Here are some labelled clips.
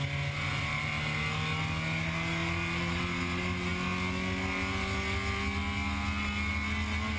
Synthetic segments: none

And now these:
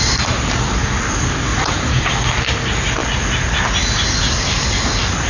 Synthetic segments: 1.5-2.1 (vocoder, Vocos)